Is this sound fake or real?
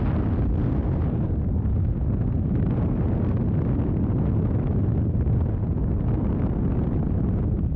real